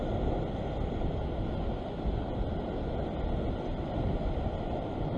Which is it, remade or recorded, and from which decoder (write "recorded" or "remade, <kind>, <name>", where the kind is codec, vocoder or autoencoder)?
recorded